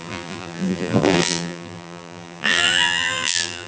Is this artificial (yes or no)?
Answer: yes